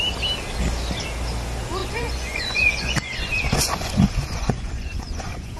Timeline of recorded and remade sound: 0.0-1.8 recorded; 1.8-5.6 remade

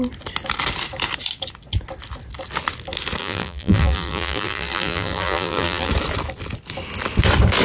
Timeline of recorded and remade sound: 0.0-3.2 recorded; 3.2-5.9 remade; 5.9-7.6 recorded

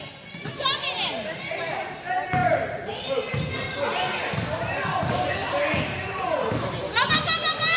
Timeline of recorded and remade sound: 0.0-7.8 recorded

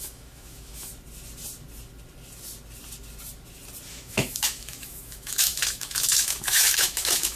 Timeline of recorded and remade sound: 0.0-0.9 remade; 0.9-3.9 recorded; 3.9-7.4 remade

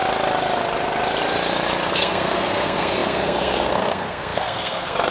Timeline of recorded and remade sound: 0.0-1.9 recorded; 1.9-5.1 remade